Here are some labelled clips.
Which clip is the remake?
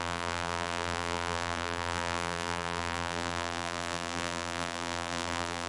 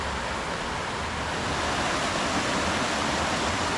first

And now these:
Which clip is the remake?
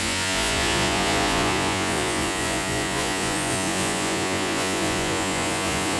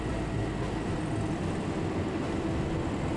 first